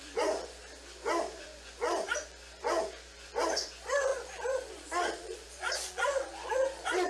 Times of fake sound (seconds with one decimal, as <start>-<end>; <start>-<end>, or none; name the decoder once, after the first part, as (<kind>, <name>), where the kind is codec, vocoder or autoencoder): 0.0-0.6 (vocoder, Vocos); 1.2-7.1